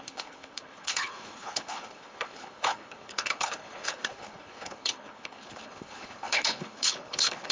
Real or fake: fake